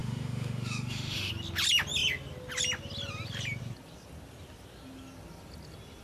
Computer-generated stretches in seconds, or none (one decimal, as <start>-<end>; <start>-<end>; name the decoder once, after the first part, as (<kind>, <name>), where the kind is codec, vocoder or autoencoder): 0.0-1.3 (autoencoder, DAC-VAE)